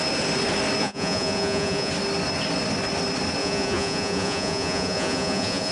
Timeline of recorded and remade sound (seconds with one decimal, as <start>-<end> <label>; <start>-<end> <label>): 0.0-0.8 recorded; 0.8-1.9 remade; 1.9-3.4 recorded; 3.4-5.7 remade